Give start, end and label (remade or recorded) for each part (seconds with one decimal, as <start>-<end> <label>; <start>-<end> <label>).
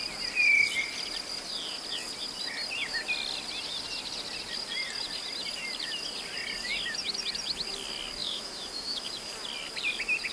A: 0.0-8.2 recorded; 8.2-9.3 remade; 9.3-10.3 recorded